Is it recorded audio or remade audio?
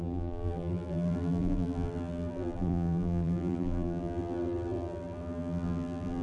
remade